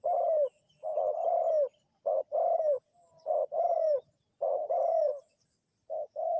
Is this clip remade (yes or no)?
no